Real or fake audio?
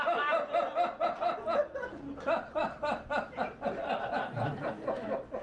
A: real